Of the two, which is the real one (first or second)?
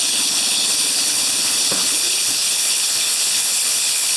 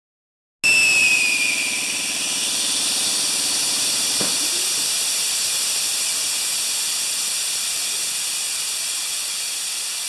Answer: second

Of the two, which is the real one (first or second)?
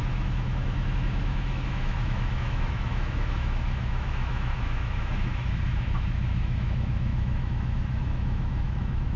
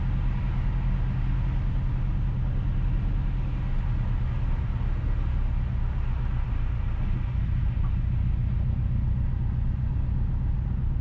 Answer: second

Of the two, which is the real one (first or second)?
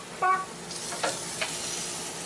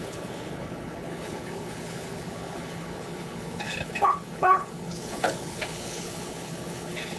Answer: first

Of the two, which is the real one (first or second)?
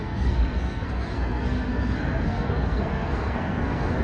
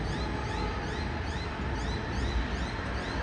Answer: second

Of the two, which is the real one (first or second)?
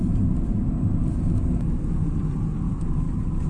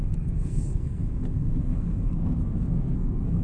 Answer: first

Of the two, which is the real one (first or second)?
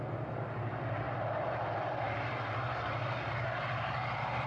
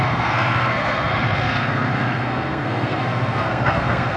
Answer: first